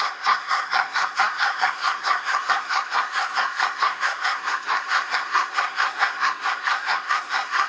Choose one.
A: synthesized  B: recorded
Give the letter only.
A